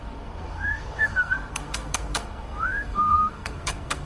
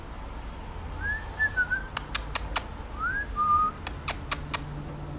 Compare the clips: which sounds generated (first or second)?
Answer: first